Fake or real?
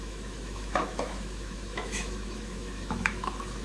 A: fake